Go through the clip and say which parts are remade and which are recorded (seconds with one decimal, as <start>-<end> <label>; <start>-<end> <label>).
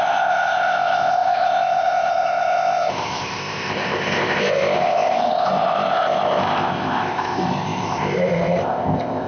0.0-9.3 remade